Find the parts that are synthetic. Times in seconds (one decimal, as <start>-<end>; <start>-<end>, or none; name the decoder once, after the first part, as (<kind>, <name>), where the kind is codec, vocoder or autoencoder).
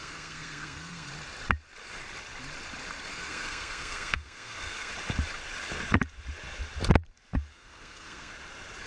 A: 0.0-1.1 (codec, SNAC); 3.1-4.9; 7.5-8.3